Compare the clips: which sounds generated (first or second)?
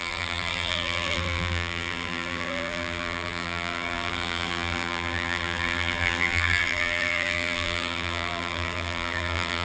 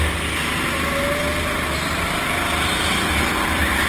first